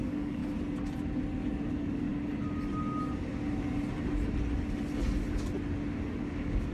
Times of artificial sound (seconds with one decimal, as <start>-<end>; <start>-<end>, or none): 0.0-0.4; 1.7-2.1; 6.1-6.7